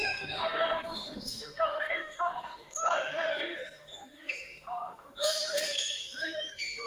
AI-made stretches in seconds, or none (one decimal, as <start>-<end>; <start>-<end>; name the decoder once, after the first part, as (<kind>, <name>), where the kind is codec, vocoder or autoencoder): 0.0-6.9 (autoencoder, DAC-VAE)